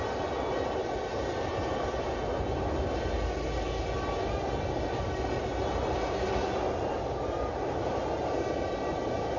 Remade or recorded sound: recorded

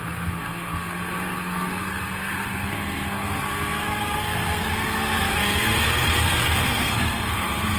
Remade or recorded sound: remade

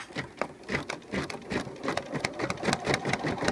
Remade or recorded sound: recorded